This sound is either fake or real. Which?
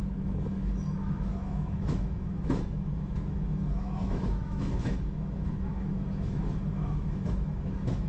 fake